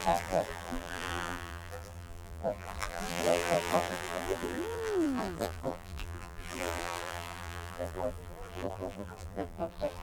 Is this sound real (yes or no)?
no